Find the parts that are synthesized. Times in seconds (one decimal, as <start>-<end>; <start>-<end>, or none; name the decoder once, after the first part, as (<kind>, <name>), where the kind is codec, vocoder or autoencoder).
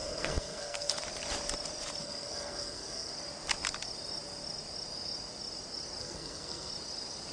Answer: 0.0-0.9 (codec, SNAC); 2.0-3.1; 6.0-6.7